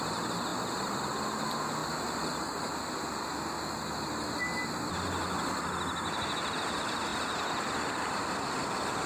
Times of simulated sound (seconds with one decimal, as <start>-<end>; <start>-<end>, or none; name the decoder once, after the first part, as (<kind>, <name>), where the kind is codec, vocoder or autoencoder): none